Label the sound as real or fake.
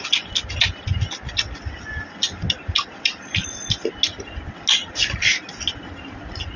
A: real